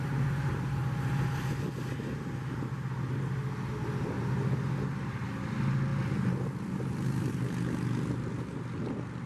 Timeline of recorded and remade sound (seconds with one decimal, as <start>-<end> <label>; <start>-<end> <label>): 0.0-5.9 recorded; 5.9-7.3 remade; 7.3-9.3 recorded